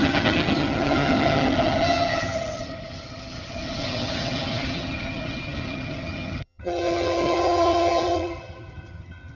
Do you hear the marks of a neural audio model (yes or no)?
yes